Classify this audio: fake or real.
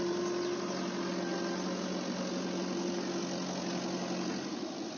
real